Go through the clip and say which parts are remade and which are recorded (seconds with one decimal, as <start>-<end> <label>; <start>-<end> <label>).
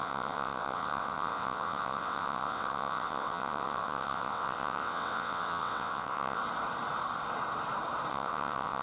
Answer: 0.0-6.4 remade; 6.4-8.1 recorded; 8.1-8.8 remade